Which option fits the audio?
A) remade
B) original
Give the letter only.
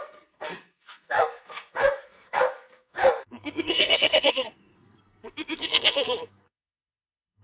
A